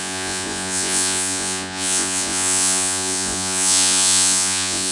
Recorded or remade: remade